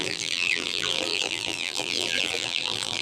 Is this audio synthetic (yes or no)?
yes